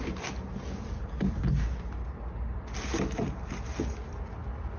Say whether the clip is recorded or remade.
recorded